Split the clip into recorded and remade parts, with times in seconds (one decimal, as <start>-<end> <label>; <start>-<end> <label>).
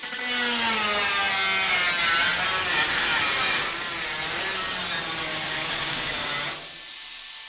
0.0-5.3 recorded; 5.3-6.1 remade; 6.1-7.5 recorded